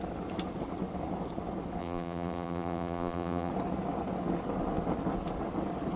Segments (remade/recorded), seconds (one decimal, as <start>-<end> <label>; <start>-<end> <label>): 0.0-1.8 recorded; 1.8-3.5 remade; 3.5-6.0 recorded

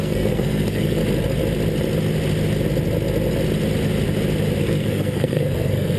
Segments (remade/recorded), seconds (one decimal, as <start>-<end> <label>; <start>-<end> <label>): 0.0-1.0 remade; 1.0-4.6 recorded; 4.6-6.0 remade

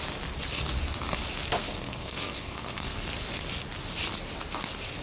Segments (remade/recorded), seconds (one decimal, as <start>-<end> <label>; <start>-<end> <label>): 0.0-1.6 recorded; 1.6-3.1 remade; 3.1-5.0 recorded

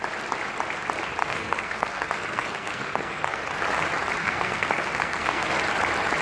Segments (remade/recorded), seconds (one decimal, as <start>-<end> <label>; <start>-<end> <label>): 0.0-1.2 recorded; 1.2-3.4 remade; 3.4-4.2 recorded; 4.2-5.6 remade; 5.6-6.2 recorded

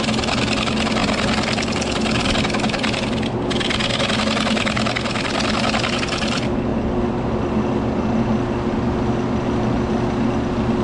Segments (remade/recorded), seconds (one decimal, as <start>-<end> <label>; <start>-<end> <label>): 0.0-10.8 recorded